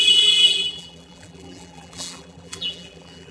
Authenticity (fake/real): fake